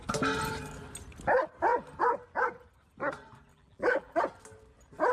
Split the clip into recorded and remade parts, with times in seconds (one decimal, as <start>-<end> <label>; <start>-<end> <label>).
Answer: 0.0-3.5 recorded; 3.5-4.2 remade; 4.2-5.1 recorded